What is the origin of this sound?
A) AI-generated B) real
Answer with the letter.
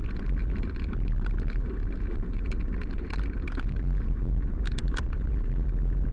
A